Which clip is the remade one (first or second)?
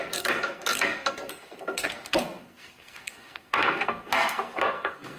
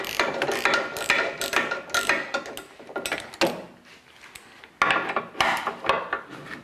first